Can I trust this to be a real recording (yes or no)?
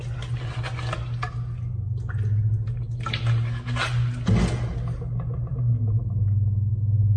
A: yes